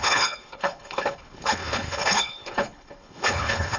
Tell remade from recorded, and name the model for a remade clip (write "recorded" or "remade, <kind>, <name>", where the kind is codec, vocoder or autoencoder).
remade, codec, HILCodec